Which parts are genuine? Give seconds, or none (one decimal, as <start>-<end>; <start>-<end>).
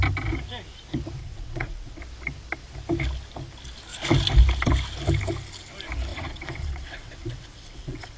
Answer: 0.0-1.2; 2.0-6.1